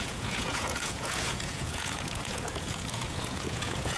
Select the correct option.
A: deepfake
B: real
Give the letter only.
A